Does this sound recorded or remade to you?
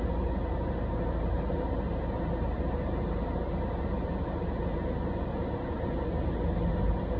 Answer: recorded